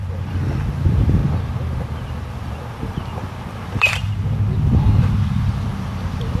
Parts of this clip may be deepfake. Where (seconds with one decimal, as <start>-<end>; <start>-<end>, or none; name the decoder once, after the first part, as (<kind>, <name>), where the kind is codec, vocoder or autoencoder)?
0.0-1.2 (vocoder, BigVGAN v2); 2.3-6.4